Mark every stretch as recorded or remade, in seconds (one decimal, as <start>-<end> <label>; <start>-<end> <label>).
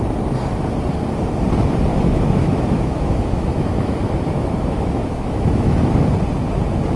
0.0-1.9 recorded; 1.9-6.1 remade; 6.1-7.0 recorded